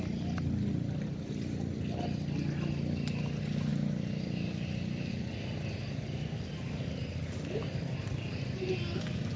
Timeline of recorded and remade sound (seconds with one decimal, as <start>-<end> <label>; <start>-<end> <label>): 0.0-9.4 recorded